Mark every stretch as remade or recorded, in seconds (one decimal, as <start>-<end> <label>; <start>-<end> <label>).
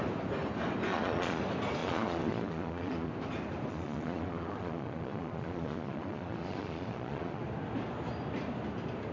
0.0-0.9 recorded; 0.9-1.4 remade; 1.4-1.8 recorded; 1.8-3.1 remade; 3.1-3.7 recorded; 3.7-7.4 remade; 7.4-9.1 recorded